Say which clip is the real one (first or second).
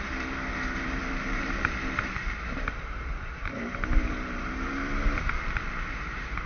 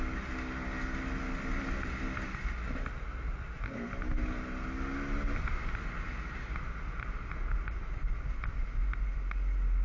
second